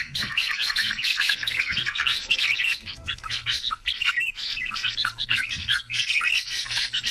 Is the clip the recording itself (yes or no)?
no